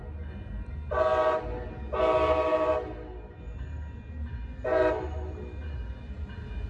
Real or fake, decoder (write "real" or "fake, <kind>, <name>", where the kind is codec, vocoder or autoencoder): real